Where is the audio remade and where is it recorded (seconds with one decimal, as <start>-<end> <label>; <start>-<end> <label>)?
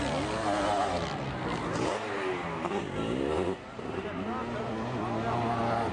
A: 0.0-5.9 recorded